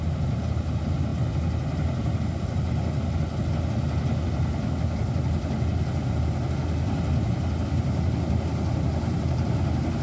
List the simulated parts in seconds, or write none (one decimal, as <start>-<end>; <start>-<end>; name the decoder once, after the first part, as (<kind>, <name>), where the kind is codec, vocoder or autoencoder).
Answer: none